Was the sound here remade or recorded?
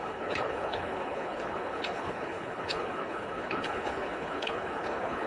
remade